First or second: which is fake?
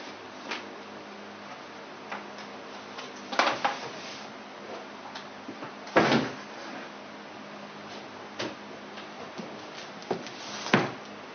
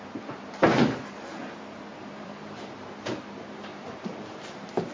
second